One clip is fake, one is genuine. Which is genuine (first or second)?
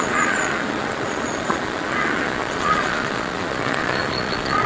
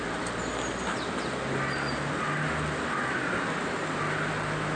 second